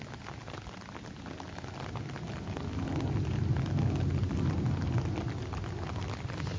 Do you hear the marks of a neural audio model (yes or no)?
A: no